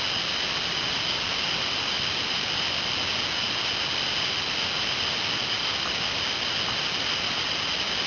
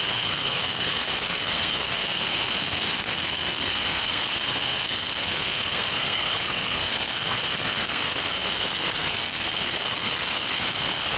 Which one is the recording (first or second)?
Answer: first